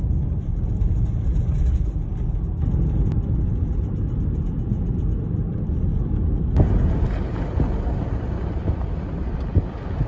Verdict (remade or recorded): recorded